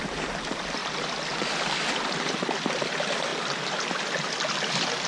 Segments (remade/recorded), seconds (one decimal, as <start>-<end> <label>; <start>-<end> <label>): 0.0-5.1 recorded